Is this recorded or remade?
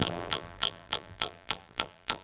remade